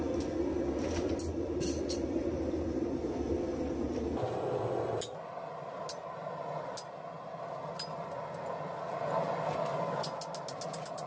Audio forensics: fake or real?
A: real